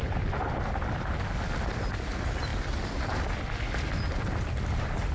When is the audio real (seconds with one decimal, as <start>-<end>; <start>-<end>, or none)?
0.0-5.1